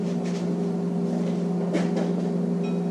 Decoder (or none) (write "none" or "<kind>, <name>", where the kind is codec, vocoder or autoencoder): none